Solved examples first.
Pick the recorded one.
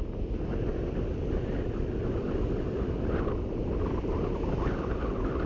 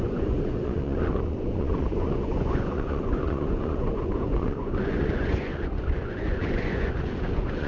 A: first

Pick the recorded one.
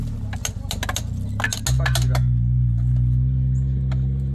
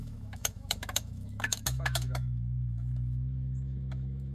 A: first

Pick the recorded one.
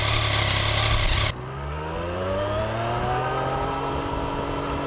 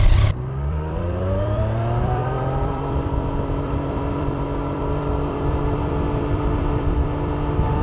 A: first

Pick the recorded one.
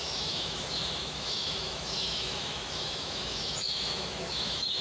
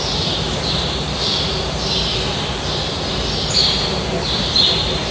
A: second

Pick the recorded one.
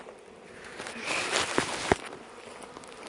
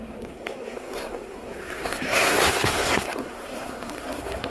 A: first